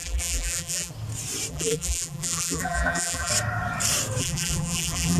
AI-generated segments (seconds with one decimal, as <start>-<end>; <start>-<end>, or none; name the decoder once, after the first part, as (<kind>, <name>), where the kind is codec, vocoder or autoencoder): 0.0-0.9 (vocoder, BigVGAN v2); 1.5-3.3; 4.2-5.2